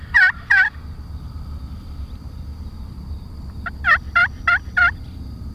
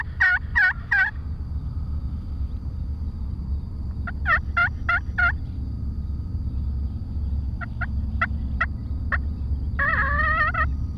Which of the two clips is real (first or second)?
second